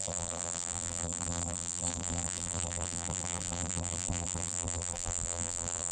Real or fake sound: fake